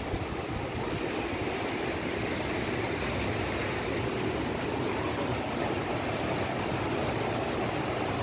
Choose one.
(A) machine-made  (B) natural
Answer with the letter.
B